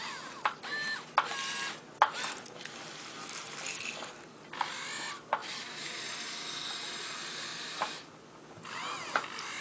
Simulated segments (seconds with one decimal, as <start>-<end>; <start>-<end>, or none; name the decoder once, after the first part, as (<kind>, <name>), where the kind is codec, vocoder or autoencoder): none